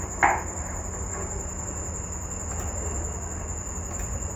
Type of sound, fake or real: real